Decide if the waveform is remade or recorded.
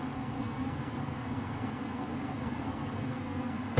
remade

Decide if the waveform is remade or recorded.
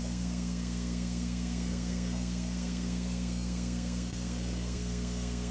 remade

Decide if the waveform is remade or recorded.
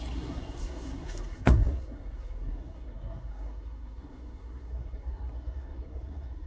remade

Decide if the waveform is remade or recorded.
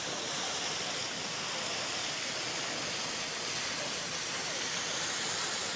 recorded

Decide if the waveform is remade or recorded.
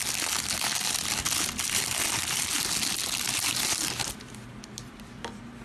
recorded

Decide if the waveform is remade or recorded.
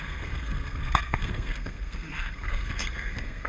remade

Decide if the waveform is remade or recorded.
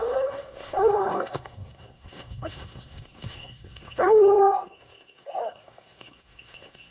remade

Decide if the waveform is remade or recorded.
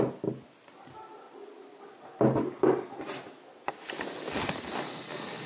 recorded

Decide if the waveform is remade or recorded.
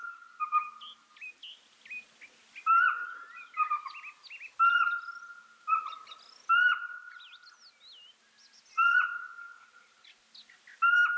recorded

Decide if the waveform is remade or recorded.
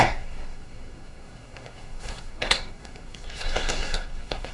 remade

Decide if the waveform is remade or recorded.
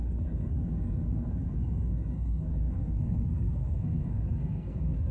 remade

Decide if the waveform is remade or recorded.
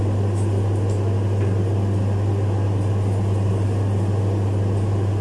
recorded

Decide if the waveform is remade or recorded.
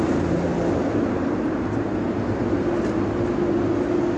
recorded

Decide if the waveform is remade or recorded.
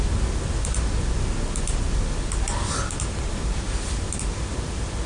recorded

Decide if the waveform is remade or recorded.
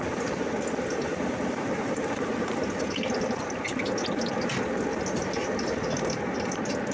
recorded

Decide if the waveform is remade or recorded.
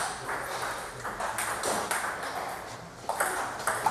recorded